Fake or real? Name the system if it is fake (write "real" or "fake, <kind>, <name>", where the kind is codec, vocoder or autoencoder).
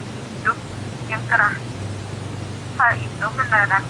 real